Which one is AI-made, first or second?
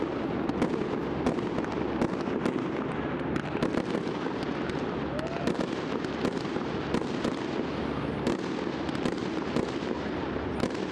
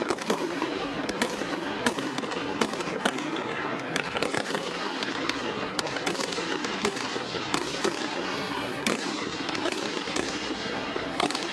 second